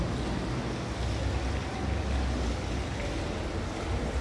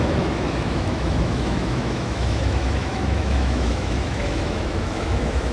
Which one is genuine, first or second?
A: first